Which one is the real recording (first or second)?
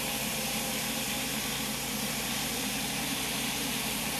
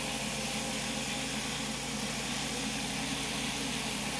second